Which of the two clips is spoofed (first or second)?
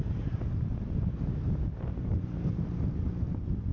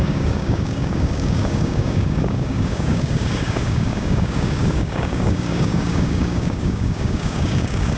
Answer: second